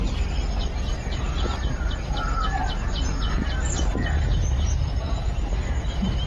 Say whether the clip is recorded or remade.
recorded